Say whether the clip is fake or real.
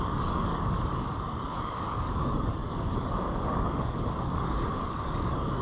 fake